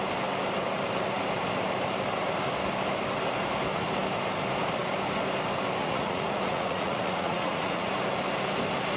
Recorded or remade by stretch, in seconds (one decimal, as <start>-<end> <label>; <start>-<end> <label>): 0.0-5.8 recorded; 5.8-7.9 remade; 7.9-9.0 recorded